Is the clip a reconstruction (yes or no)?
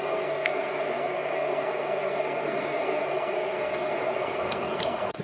yes